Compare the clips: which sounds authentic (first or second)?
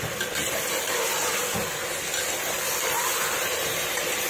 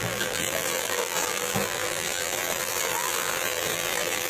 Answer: first